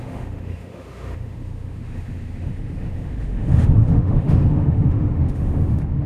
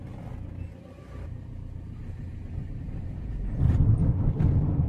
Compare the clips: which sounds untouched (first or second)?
second